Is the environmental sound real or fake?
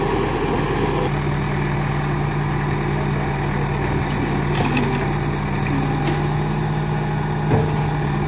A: real